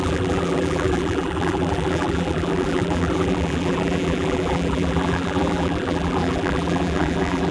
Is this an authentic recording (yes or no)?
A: no